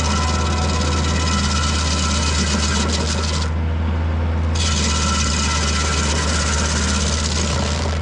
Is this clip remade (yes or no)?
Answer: no